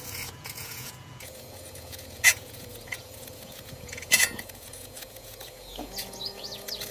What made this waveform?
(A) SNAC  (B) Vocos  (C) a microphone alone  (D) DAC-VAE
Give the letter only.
B